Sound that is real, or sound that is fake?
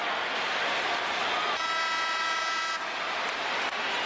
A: real